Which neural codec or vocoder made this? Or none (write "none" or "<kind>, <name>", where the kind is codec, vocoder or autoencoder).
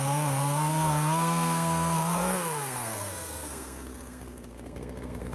codec, SNAC